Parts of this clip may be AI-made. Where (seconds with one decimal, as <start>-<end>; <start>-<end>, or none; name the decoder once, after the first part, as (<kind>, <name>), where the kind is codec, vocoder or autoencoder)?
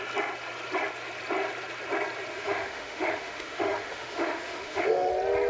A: 2.3-5.1 (autoencoder, DAC-VAE)